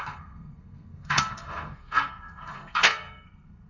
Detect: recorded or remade remade